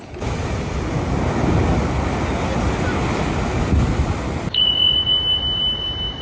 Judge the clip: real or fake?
real